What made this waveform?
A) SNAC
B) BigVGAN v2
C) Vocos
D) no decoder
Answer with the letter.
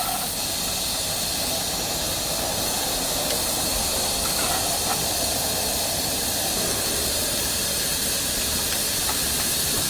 D